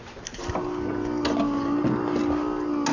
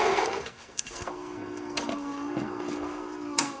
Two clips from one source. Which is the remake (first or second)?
second